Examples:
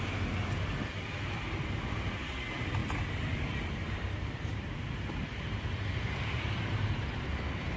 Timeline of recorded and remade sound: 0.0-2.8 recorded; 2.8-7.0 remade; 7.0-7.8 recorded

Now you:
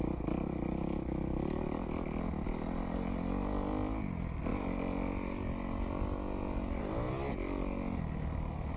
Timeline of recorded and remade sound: 0.0-8.8 recorded

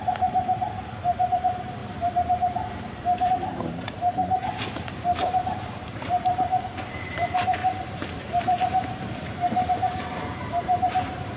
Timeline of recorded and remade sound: 0.0-1.8 remade; 1.8-3.3 recorded; 3.3-11.4 remade

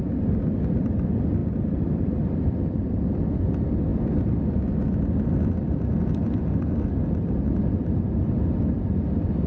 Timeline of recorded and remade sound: 0.0-1.4 recorded; 1.4-3.2 remade; 3.2-3.9 recorded; 3.9-4.4 remade; 4.4-9.5 recorded

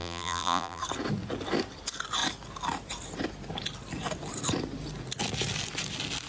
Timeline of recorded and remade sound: 0.0-0.8 remade; 0.8-6.3 recorded

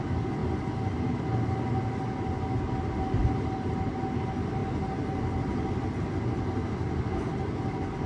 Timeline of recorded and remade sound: 0.0-8.1 recorded

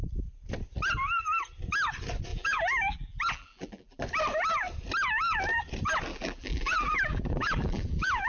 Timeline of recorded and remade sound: 0.0-2.3 recorded; 2.3-4.0 remade; 4.0-6.1 recorded; 6.1-8.3 remade